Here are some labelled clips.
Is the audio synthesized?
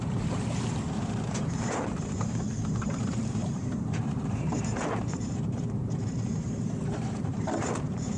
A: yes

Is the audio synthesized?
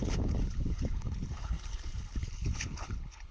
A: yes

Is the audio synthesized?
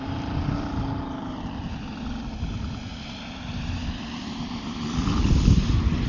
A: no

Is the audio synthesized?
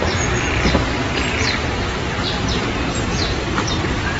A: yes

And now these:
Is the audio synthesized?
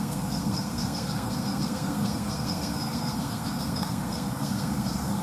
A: yes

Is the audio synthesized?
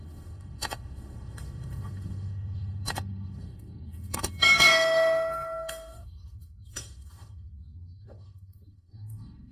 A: yes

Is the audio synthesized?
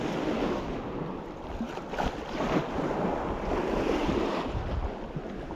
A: no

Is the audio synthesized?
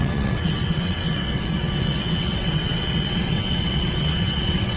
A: yes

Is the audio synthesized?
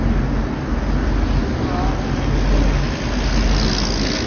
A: no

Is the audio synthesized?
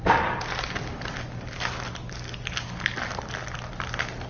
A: no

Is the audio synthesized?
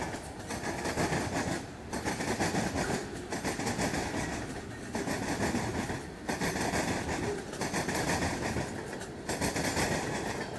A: no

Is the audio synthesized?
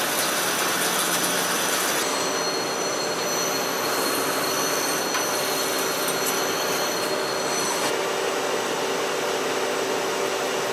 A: no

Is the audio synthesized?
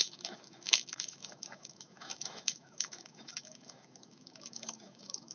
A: yes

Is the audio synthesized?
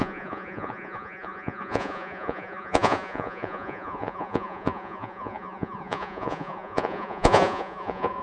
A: yes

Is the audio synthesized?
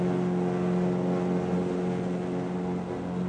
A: no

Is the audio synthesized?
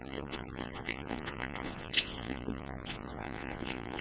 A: yes